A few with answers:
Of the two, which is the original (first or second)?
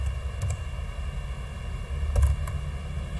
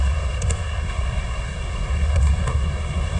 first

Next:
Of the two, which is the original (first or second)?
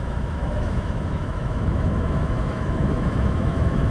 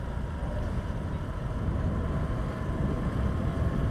second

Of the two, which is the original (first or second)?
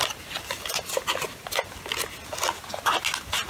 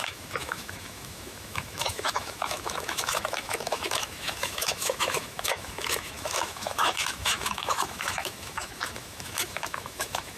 first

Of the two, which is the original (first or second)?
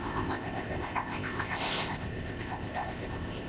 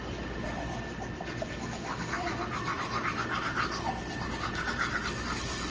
second